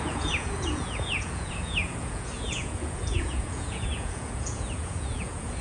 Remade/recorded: remade